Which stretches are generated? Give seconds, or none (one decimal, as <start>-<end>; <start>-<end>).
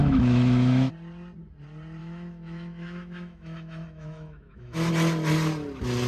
0.0-0.9; 2.0-4.9